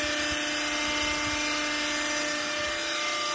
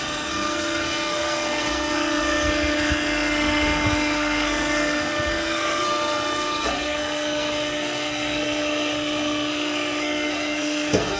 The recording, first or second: first